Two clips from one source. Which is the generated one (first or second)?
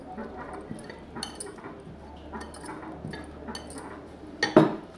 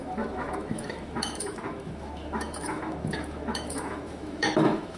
second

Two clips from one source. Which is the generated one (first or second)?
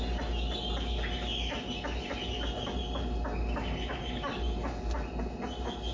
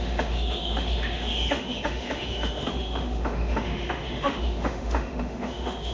second